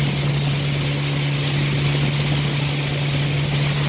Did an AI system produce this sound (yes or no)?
no